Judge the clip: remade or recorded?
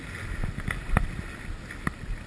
recorded